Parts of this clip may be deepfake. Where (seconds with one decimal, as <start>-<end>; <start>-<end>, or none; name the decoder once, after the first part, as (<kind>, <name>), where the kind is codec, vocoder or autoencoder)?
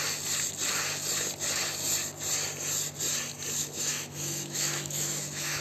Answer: 3.6-5.6 (autoencoder, DAC-VAE)